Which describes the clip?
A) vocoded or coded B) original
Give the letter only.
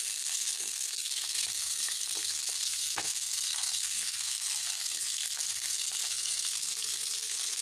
A